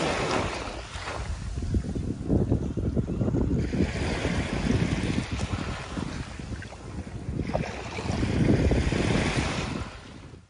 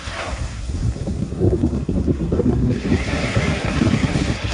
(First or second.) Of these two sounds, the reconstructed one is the second